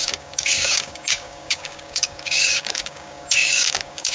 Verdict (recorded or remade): remade